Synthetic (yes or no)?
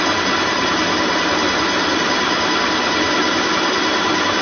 no